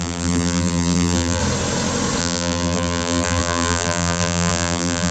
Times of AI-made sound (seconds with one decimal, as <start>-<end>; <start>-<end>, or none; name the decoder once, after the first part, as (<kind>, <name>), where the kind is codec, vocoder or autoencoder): 0.0-1.4 (vocoder, BigVGAN v2); 2.2-5.1